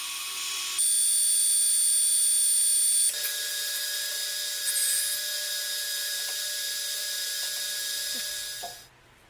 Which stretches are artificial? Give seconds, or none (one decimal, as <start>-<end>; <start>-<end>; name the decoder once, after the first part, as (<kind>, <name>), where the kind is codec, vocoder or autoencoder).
none